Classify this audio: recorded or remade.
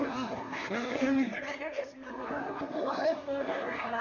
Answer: remade